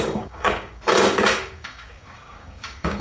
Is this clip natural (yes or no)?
no